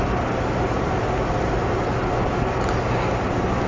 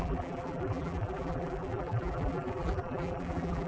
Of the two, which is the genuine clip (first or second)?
first